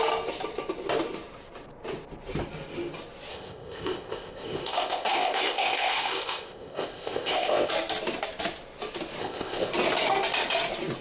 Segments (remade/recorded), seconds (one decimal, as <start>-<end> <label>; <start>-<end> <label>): 0.0-3.3 recorded; 3.3-7.7 remade; 7.7-9.2 recorded; 9.2-9.7 remade; 9.7-11.0 recorded